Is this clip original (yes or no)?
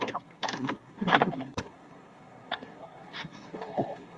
no